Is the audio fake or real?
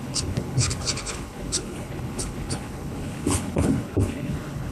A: fake